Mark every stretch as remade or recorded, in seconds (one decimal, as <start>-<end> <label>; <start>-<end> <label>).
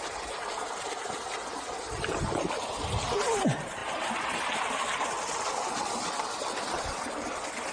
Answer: 0.0-7.7 recorded